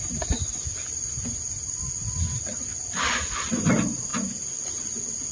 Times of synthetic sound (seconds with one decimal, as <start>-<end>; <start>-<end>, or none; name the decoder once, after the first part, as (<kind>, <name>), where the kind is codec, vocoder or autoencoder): none